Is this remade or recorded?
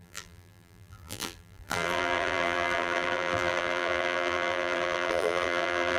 remade